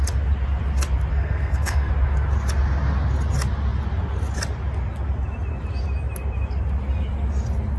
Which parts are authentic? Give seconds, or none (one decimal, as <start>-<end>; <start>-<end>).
0.0-1.1; 1.9-7.8

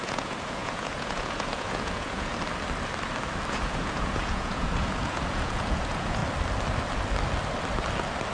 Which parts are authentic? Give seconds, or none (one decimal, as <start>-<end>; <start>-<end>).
2.3-3.5; 6.2-8.3

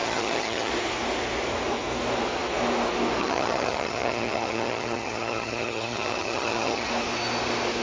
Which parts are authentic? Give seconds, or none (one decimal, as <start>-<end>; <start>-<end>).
0.7-3.2; 6.9-7.8